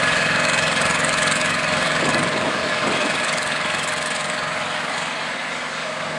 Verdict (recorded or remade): remade